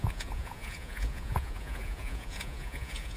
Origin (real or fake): fake